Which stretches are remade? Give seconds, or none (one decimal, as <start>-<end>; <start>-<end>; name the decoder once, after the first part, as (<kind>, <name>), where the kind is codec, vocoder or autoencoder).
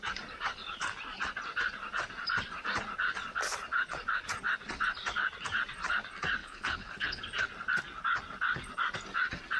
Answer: 6.4-7.2 (codec, HILCodec)